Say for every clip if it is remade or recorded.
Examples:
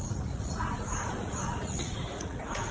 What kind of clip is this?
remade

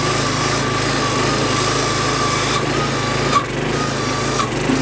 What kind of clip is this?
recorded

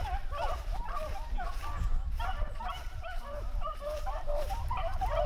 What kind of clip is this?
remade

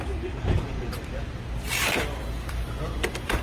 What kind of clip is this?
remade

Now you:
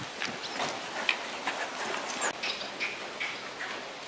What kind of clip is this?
recorded